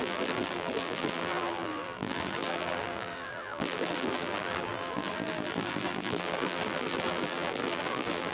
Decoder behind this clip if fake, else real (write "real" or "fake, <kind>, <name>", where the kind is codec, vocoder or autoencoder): fake, vocoder, BigVGAN v2